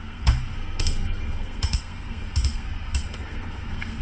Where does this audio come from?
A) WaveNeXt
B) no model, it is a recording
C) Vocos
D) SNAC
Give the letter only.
D